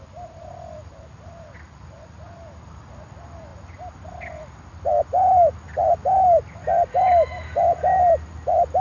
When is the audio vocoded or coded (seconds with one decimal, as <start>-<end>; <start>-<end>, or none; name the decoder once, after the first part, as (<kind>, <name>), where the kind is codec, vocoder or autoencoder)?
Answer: none